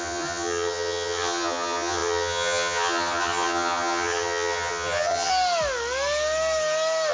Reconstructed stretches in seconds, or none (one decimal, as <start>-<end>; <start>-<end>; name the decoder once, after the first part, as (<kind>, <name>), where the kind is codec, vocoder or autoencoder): 0.0-5.3 (vocoder, HiFi-GAN)